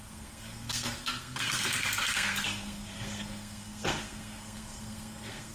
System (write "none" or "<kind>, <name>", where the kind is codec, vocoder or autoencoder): codec, SNAC